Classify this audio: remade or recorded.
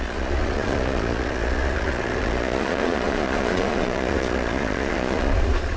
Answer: remade